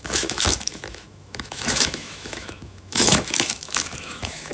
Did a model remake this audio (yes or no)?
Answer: yes